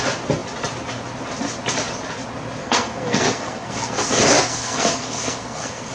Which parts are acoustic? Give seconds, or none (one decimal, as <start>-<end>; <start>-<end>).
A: 0.0-2.6